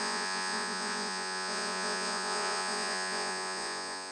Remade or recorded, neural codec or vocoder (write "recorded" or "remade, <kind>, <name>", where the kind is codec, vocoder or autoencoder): remade, vocoder, Vocos